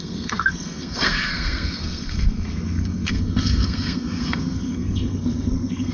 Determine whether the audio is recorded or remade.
remade